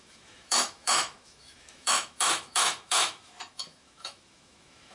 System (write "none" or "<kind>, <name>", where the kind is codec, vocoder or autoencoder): autoencoder, DAC-VAE